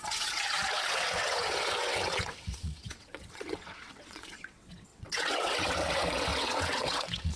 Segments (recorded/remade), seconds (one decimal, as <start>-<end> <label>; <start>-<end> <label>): 0.0-7.4 remade